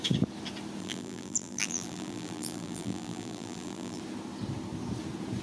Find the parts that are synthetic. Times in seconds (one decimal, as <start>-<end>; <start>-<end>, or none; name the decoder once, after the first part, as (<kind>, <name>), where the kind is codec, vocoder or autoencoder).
0.8-4.0 (vocoder, BigVGAN v2)